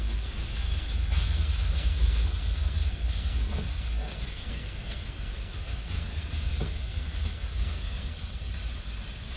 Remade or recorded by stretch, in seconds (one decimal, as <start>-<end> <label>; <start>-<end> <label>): 0.0-8.5 remade; 8.5-9.4 recorded